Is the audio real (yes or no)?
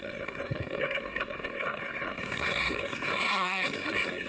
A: no